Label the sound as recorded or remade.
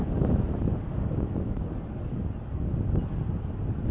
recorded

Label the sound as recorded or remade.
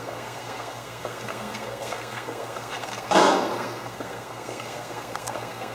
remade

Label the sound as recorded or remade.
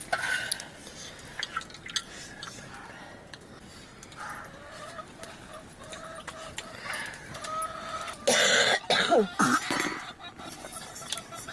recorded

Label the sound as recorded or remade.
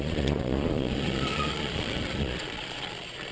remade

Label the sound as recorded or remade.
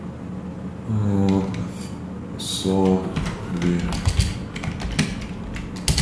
recorded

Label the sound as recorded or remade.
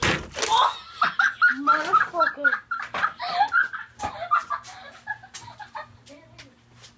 recorded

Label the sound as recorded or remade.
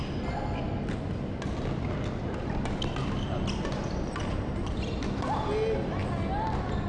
recorded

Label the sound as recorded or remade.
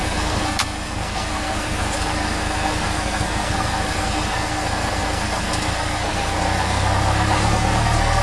remade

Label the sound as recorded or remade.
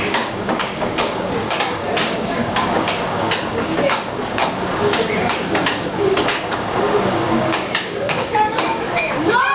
remade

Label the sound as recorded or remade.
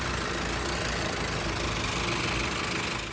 recorded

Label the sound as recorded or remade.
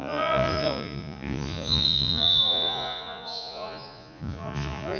remade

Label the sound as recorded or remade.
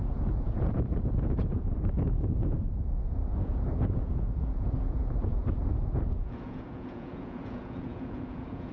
remade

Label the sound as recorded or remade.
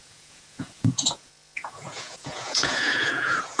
remade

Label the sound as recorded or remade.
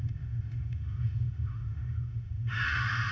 remade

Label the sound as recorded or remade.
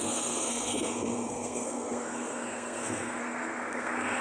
remade